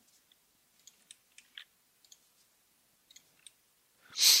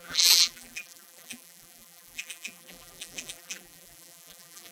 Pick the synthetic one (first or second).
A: second